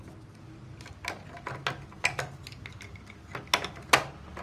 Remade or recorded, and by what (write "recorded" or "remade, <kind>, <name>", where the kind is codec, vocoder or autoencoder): recorded